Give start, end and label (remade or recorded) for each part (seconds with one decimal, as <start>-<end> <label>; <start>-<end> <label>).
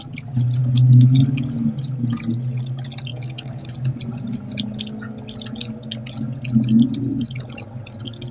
0.0-0.6 recorded; 0.6-1.2 remade; 1.2-3.1 recorded; 3.1-3.7 remade; 3.7-8.3 recorded